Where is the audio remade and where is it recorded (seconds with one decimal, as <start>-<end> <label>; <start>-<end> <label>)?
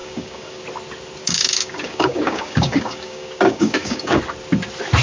0.0-0.6 remade; 0.6-1.2 recorded; 1.2-4.2 remade; 4.2-5.0 recorded